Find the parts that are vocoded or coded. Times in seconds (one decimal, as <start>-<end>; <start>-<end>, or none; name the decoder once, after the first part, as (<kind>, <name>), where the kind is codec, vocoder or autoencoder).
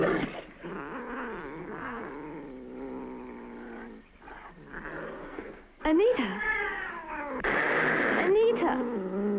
1.6-2.1 (codec, SNAC); 5.2-5.8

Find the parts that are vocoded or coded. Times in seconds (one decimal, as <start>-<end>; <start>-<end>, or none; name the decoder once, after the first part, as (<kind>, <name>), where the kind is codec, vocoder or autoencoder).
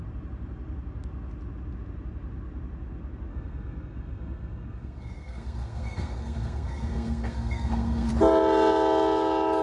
3.3-8.1 (codec, SNAC)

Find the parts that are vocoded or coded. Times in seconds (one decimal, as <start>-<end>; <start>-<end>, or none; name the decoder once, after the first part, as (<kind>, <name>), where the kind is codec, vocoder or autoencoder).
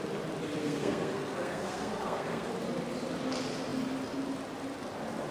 0.6-2.5 (codec, SNAC)